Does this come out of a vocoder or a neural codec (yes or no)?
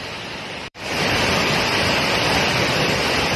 yes